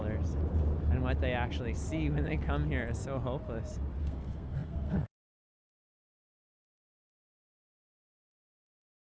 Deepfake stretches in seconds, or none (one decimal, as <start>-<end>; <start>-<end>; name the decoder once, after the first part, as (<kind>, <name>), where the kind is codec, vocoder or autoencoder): 4.0-9.0 (codec, SNAC)